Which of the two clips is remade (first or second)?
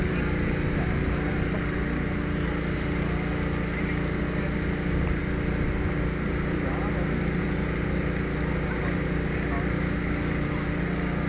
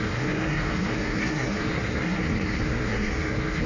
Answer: second